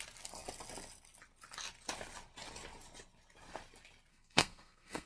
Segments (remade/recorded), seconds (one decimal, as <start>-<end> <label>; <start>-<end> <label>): 0.0-4.1 recorded; 4.1-5.1 remade